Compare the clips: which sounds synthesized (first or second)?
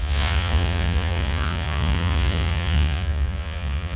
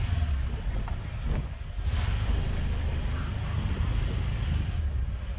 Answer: first